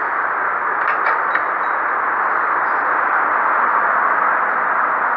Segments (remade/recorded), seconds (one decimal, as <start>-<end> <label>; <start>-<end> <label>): 0.0-5.2 recorded

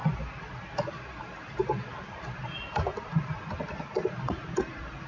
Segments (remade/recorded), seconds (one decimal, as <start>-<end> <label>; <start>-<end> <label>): 0.0-5.1 recorded

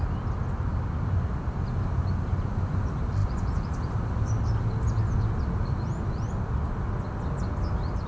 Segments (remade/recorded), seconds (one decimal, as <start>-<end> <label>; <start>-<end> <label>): 0.0-8.1 recorded

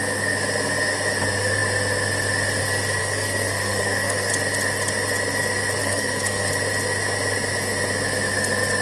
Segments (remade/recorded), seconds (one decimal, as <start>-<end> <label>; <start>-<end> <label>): 0.0-3.0 recorded; 3.0-4.3 remade; 4.3-5.8 recorded; 5.8-6.5 remade; 6.5-8.8 recorded

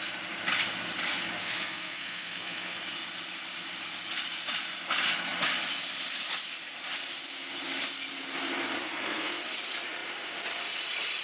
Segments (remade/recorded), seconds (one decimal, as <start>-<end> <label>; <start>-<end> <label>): 0.0-1.4 recorded; 1.4-2.8 remade; 2.8-8.8 recorded; 8.8-9.4 remade; 9.4-11.2 recorded